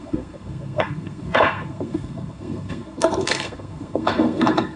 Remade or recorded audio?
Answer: remade